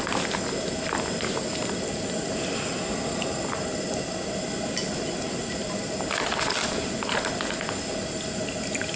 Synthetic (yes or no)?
no